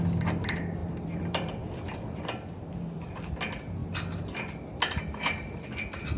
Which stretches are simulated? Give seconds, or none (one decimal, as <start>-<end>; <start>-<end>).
0.8-3.1